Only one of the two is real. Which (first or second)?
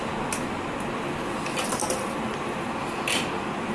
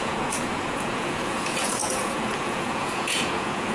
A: first